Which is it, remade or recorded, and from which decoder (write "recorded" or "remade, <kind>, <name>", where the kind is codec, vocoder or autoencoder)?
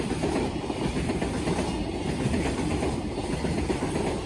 recorded